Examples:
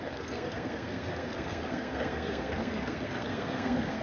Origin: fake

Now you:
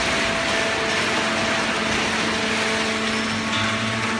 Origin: real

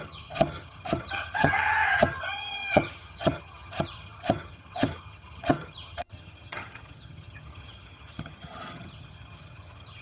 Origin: fake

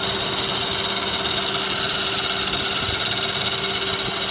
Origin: real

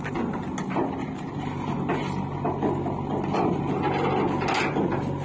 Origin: real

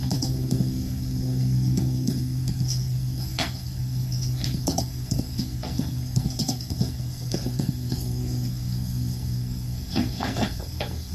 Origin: fake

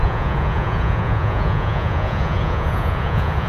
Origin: fake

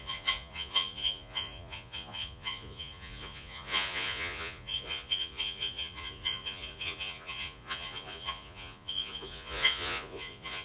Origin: fake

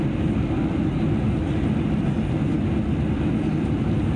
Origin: real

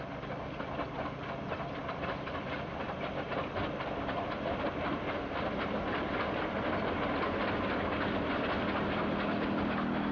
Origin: real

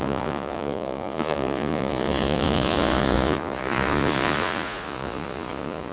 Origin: fake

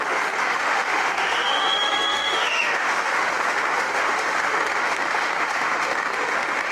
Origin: fake